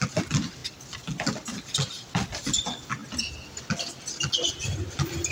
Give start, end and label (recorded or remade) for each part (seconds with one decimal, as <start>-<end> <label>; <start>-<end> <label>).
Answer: 0.0-5.3 recorded